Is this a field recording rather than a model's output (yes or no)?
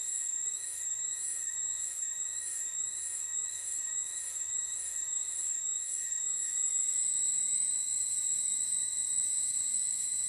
no